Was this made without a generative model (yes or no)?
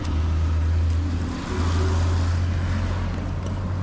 yes